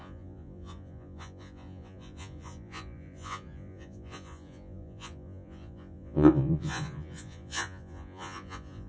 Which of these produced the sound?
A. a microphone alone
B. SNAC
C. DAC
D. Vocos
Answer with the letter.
D